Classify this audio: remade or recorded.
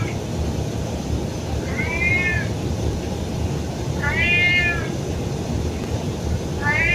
recorded